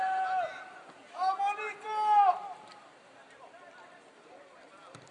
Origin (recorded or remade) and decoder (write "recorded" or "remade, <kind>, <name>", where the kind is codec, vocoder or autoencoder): recorded